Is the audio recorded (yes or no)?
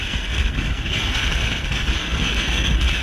no